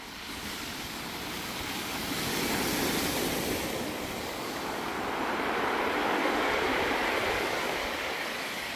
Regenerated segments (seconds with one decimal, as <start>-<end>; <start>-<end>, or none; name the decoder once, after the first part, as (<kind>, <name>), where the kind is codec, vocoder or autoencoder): 0.0-2.3 (codec, DAC); 3.7-4.9; 6.0-6.7; 7.3-8.8